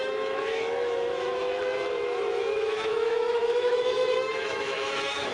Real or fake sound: fake